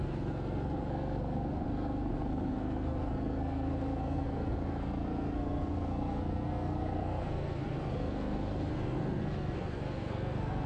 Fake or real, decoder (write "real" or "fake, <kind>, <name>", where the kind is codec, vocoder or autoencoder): fake, codec, SNAC